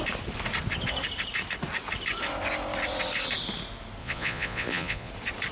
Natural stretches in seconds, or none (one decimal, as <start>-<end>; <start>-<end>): 0.0-4.0; 5.1-5.5